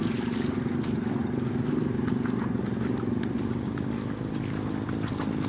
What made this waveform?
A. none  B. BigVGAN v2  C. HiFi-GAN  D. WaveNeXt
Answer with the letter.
A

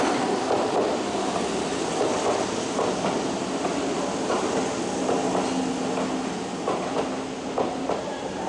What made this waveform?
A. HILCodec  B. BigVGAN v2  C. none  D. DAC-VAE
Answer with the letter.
C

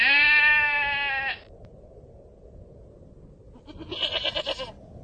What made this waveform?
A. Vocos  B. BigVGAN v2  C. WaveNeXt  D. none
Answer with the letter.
D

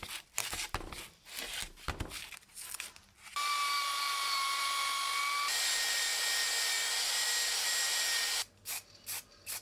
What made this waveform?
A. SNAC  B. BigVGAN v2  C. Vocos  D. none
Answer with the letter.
D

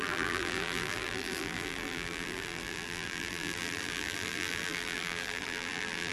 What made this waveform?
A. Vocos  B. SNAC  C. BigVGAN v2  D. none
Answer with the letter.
C